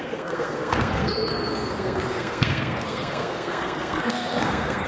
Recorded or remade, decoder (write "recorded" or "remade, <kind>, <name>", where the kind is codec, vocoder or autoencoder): remade, codec, SNAC